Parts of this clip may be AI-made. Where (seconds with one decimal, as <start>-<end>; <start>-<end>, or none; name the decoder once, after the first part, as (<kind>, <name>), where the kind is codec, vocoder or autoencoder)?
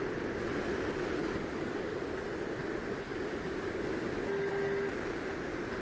1.2-2.0 (codec, DAC); 3.1-3.8